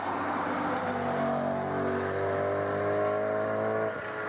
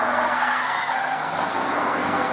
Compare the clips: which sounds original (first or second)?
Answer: first